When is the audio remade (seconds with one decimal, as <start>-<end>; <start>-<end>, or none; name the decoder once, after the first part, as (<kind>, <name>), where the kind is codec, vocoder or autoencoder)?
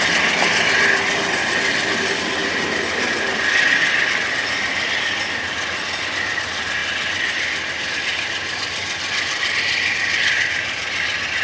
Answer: none